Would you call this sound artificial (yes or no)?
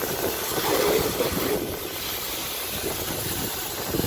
no